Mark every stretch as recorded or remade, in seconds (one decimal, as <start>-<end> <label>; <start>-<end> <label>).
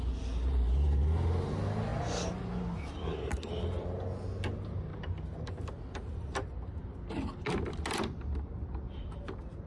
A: 0.0-9.7 recorded